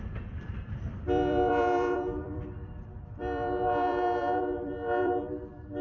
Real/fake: fake